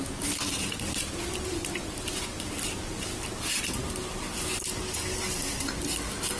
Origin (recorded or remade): recorded